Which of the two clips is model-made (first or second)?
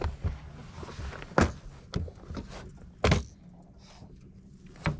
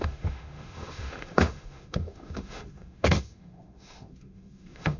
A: second